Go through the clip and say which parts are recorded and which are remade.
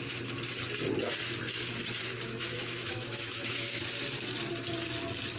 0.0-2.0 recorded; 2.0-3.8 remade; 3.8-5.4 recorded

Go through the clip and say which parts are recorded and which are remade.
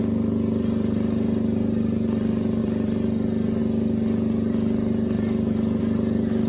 0.0-6.5 recorded